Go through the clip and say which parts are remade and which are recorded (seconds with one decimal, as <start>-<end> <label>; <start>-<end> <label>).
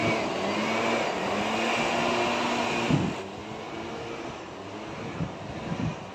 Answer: 0.0-6.1 recorded